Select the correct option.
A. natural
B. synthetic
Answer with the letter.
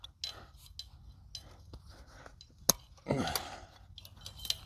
A